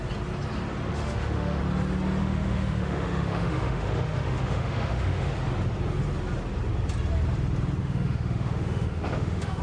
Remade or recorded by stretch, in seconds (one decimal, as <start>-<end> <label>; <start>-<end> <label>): 0.0-0.9 recorded; 0.9-1.6 remade; 1.6-2.2 recorded; 2.2-5.3 remade; 5.3-7.8 recorded; 7.8-9.6 remade